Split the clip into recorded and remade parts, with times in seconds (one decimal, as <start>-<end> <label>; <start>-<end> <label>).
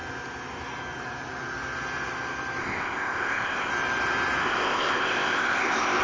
0.0-2.6 recorded; 2.6-3.7 remade; 3.7-4.4 recorded; 4.4-6.0 remade